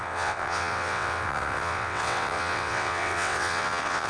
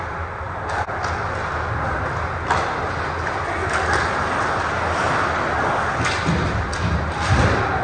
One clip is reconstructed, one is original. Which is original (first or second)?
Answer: second